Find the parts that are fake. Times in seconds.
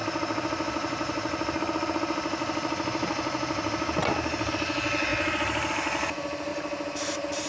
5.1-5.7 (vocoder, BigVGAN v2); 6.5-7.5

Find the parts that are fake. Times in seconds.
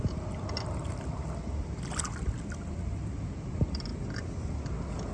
none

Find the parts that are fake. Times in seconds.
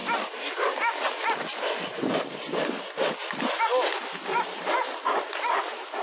0.0-3.6 (vocoder, BigVGAN v2)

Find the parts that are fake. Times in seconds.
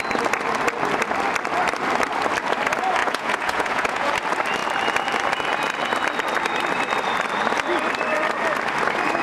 3.0-4.1 (vocoder, Vocos)